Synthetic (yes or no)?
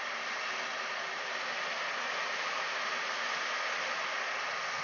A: no